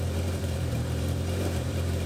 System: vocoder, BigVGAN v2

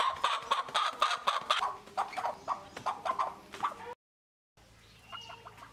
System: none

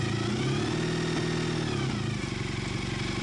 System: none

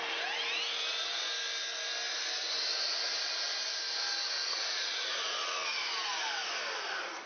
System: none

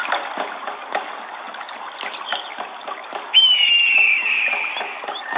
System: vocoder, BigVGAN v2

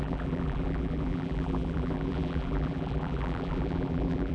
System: vocoder, BigVGAN v2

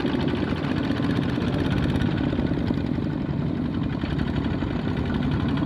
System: none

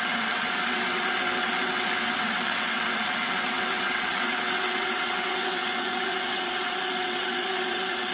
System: vocoder, WaveNeXt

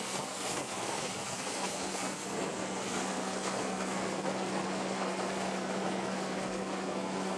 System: codec, SNAC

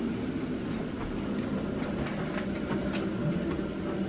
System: none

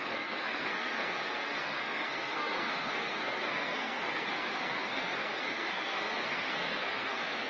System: codec, SNAC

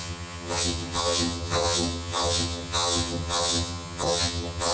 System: vocoder, HiFi-GAN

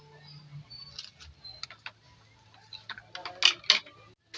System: none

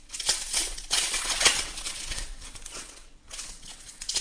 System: vocoder, WaveNeXt